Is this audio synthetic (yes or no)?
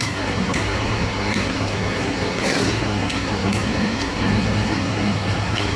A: yes